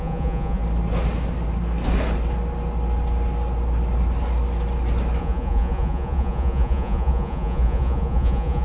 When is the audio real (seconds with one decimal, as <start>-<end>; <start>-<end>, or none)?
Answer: 0.6-5.2